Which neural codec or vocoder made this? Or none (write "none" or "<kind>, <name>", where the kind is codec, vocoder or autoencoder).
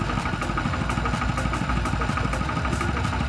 none